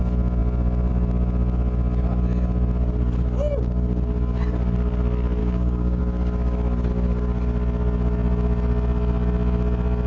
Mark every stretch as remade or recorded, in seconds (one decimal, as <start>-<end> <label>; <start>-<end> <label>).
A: 0.0-5.4 recorded; 5.4-6.0 remade; 6.0-10.1 recorded

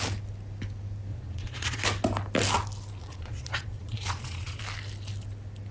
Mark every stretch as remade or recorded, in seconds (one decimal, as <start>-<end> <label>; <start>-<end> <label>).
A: 0.0-1.1 recorded; 1.1-1.8 remade; 1.8-3.0 recorded; 3.0-4.6 remade; 4.6-5.7 recorded

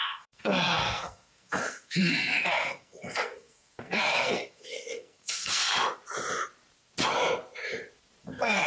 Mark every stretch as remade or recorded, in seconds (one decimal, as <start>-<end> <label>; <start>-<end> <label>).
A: 0.0-5.6 remade; 5.6-8.2 recorded; 8.2-8.7 remade

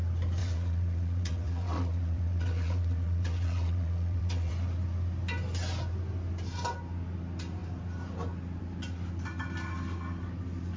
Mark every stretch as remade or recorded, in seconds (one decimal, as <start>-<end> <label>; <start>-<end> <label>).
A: 0.0-0.4 recorded; 0.4-4.5 remade; 4.5-10.8 recorded

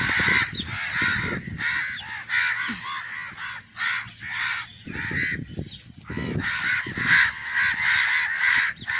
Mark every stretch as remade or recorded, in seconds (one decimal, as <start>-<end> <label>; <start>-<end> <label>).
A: 0.0-9.0 recorded